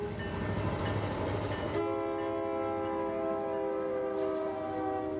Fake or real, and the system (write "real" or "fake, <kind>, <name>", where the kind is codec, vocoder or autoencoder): real